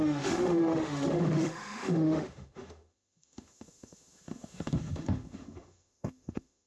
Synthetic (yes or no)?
yes